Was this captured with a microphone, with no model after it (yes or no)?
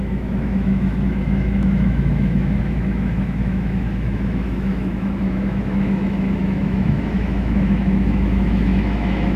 no